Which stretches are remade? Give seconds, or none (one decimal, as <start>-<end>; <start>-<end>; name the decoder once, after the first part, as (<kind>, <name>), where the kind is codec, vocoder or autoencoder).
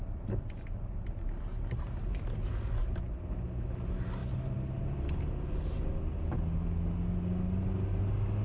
none